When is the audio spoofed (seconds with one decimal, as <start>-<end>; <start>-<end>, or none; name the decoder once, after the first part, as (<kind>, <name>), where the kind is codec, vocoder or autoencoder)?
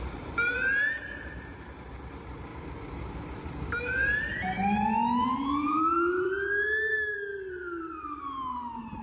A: 0.0-2.5 (vocoder, BigVGAN v2); 3.1-9.0